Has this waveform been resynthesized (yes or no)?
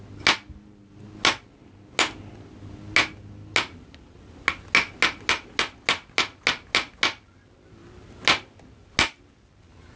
no